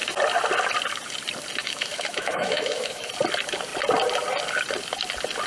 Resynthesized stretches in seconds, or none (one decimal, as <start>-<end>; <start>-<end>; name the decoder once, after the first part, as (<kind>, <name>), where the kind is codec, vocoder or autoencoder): 1.6-3.1 (autoencoder, DAC-VAE)